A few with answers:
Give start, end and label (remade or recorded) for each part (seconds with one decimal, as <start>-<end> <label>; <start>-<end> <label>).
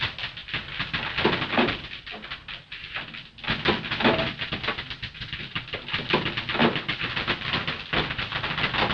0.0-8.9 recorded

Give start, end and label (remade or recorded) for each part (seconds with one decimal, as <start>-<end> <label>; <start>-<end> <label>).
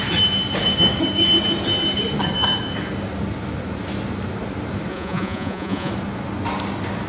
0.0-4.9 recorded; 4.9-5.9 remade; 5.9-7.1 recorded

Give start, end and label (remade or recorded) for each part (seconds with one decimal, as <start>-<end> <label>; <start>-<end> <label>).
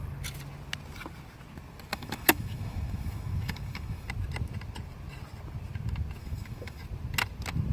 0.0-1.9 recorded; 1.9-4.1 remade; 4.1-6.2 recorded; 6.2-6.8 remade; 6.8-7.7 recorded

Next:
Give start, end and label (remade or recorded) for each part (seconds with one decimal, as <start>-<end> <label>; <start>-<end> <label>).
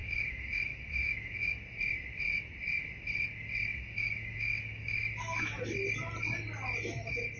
0.0-1.5 remade; 1.5-3.7 recorded; 3.7-5.4 remade; 5.4-7.4 recorded